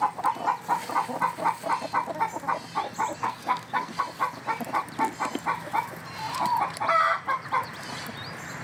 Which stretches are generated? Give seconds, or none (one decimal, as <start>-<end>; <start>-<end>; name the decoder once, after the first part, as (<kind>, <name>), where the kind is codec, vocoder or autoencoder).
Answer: 3.2-4.0 (codec, SNAC)